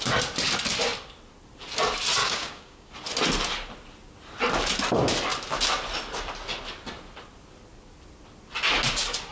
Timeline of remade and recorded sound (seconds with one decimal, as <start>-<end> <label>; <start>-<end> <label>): 0.0-2.2 recorded; 2.2-2.9 remade; 2.9-9.3 recorded